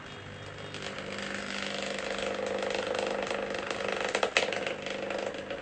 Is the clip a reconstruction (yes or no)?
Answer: no